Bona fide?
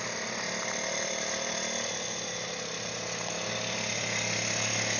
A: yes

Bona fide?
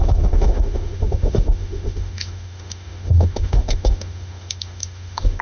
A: no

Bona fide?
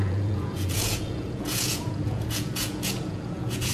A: no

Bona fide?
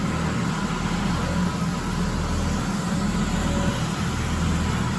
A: yes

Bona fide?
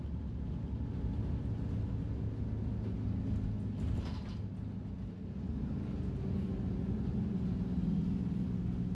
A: yes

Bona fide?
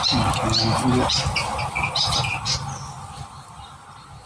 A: yes